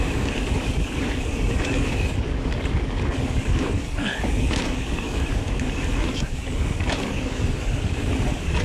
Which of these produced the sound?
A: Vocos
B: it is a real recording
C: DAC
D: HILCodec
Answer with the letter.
C